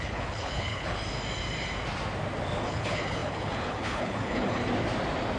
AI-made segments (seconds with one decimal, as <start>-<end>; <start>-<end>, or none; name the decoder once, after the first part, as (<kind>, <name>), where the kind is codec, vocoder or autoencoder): 0.0-1.0 (codec, HILCodec); 2.6-4.6